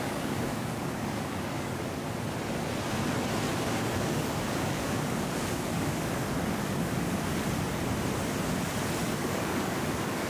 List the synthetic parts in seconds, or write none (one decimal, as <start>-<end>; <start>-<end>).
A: 0.0-2.0; 3.5-7.3; 9.1-10.3